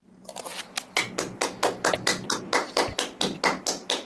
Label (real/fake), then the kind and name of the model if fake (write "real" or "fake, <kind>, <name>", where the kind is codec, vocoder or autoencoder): real